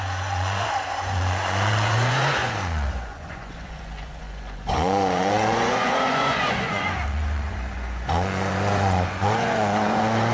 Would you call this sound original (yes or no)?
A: no